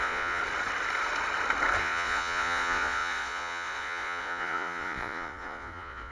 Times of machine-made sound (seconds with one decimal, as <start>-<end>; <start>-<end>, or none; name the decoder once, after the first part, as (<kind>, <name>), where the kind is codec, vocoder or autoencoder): 0.0-0.4 (vocoder, Vocos); 1.8-6.1